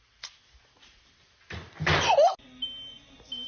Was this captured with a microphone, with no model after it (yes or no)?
yes